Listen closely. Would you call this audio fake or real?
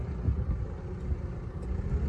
real